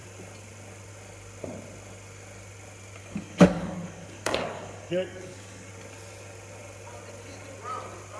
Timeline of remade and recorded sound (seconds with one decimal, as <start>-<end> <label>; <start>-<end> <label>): 0.0-3.0 recorded; 3.0-5.7 remade; 5.7-8.2 recorded

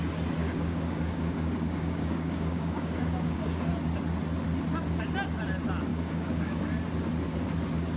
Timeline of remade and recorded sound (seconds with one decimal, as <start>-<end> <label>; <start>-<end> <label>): 0.0-0.4 recorded; 0.4-3.7 remade; 3.7-5.9 recorded; 5.9-6.6 remade; 6.6-8.0 recorded

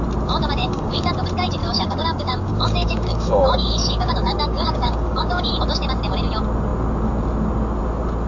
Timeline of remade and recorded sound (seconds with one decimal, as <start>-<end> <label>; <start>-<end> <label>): 0.0-0.6 recorded; 0.6-1.1 remade; 1.1-1.6 recorded; 1.6-5.5 remade; 5.5-8.3 recorded

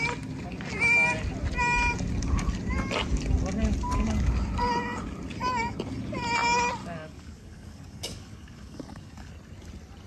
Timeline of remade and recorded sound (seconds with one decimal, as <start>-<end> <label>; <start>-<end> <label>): 0.0-6.8 recorded; 6.8-9.3 remade; 9.3-10.1 recorded

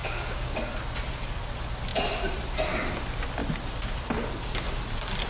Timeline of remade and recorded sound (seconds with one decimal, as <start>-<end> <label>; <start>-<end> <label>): 0.0-0.6 remade; 0.6-5.3 recorded

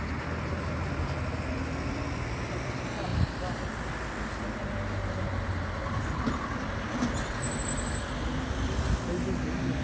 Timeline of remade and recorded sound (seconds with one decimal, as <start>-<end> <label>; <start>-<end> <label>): 0.0-9.8 recorded